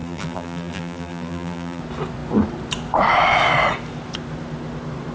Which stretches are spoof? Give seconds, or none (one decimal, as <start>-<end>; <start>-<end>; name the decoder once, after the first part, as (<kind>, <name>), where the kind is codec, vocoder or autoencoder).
0.0-1.8 (vocoder, BigVGAN v2)